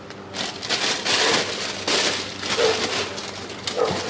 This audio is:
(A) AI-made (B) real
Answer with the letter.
B